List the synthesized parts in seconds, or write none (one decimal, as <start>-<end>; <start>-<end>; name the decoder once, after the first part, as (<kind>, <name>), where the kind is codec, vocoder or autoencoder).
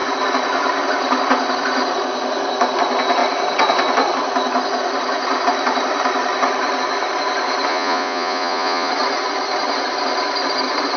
7.7-8.9 (vocoder, Vocos)